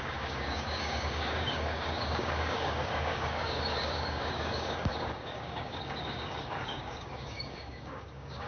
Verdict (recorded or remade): remade